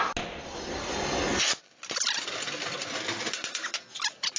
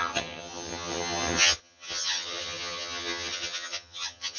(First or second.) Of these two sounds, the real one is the first